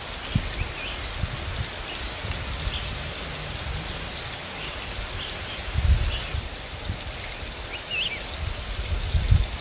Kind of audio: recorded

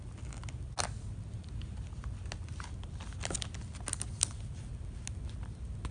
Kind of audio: recorded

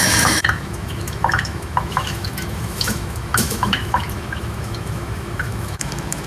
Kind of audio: remade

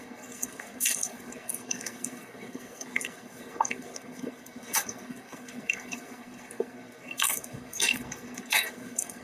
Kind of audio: remade